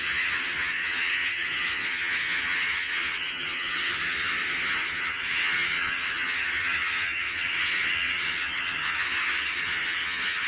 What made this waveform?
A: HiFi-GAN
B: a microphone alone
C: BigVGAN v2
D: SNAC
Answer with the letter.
A